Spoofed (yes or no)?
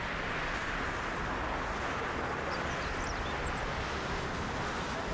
no